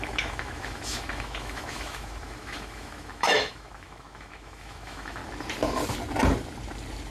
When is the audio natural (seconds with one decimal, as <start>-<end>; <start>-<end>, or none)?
5.2-7.1